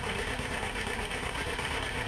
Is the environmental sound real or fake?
fake